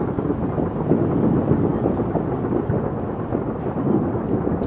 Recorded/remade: recorded